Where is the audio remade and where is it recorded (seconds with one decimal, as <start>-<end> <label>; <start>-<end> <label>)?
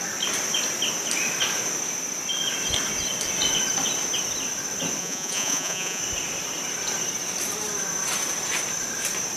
0.0-5.0 recorded; 5.0-6.0 remade; 6.0-9.4 recorded